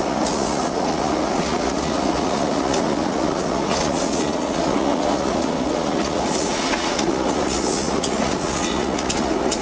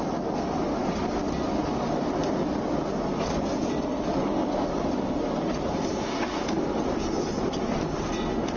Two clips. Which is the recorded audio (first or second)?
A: second